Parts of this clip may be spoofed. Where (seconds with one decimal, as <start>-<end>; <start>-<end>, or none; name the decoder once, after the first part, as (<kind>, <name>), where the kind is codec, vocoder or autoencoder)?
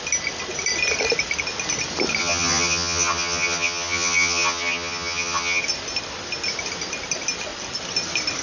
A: 2.2-5.6 (vocoder, HiFi-GAN)